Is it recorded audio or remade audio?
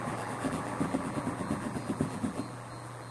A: remade